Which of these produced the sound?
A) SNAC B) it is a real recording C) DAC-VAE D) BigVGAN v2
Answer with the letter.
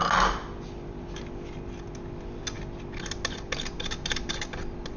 B